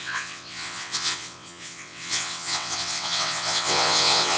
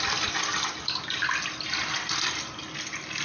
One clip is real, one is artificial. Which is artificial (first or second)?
first